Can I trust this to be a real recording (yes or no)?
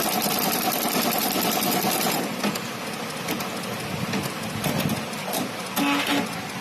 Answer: yes